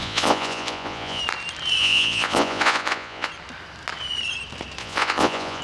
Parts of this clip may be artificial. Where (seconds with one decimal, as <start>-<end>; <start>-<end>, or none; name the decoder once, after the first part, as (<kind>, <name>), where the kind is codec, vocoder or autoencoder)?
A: 0.0-1.2 (vocoder, Vocos); 1.8-3.3; 4.8-5.6